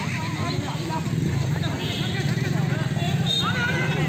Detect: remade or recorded recorded